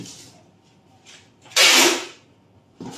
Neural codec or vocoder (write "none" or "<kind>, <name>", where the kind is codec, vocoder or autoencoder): none